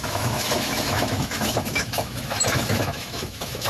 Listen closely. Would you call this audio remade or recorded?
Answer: remade